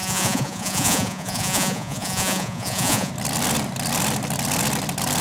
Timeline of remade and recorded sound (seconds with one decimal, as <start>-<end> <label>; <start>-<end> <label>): 0.0-3.1 remade; 3.1-5.2 recorded